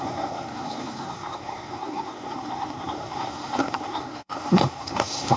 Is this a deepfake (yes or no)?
yes